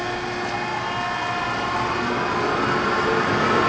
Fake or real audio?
real